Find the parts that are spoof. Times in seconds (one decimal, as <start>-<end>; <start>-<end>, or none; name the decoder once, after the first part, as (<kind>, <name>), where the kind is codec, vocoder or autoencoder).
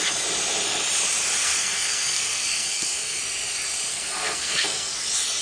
1.4-3.2 (codec, SNAC); 3.9-5.0